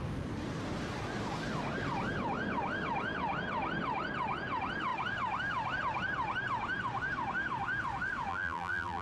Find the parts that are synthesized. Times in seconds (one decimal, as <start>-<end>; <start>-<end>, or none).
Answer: 8.3-9.0